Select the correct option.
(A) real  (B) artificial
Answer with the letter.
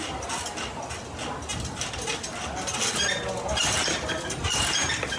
A